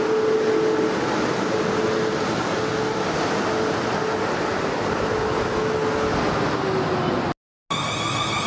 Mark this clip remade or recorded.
recorded